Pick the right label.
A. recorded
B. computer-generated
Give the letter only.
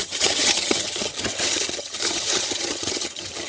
B